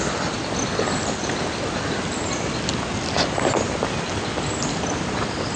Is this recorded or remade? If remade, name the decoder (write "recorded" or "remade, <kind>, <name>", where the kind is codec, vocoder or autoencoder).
recorded